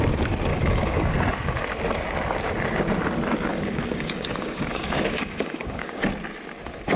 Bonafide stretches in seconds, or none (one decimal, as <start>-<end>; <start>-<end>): 0.0-0.5; 1.1-3.5; 6.0-7.0